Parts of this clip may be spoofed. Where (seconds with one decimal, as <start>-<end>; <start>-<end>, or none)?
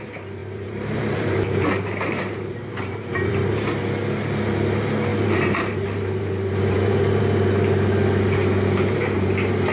0.4-3.3; 5.1-7.2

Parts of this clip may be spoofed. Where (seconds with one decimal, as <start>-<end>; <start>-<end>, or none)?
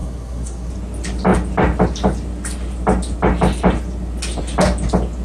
0.0-0.7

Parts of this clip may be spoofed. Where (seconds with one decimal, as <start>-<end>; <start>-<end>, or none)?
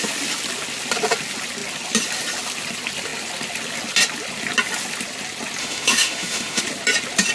5.6-6.6